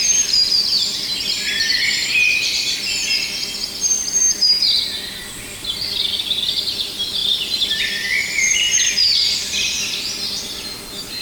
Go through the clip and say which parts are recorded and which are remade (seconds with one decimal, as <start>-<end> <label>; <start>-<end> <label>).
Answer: 0.0-11.2 recorded